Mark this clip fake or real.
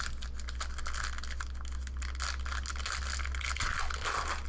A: real